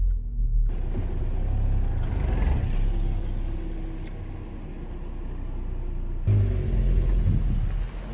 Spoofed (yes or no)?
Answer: no